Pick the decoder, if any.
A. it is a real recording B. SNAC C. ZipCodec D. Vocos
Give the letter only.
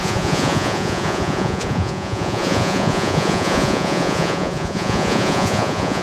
D